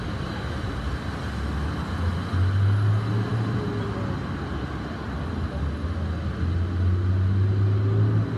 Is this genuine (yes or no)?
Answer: yes